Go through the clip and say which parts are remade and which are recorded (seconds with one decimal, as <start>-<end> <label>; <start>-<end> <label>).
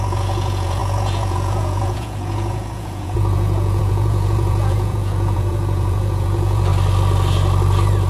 0.0-6.7 remade; 6.7-8.1 recorded